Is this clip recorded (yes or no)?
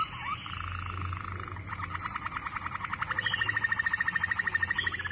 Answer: yes